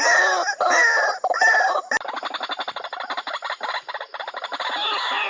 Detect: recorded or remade recorded